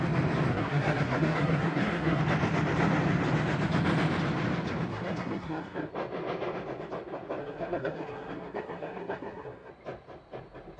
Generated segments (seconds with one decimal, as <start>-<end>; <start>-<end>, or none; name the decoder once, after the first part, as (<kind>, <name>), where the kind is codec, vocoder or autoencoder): 0.5-2.2 (codec, SNAC); 4.9-5.9; 7.4-9.7